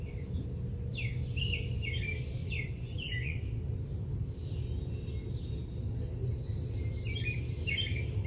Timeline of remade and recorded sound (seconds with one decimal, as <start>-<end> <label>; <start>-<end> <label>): 0.0-2.4 recorded; 2.4-3.4 remade; 3.4-8.3 recorded